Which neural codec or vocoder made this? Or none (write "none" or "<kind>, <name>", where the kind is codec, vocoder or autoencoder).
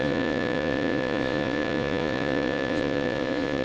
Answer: vocoder, Vocos